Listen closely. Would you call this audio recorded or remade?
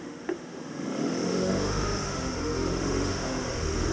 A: remade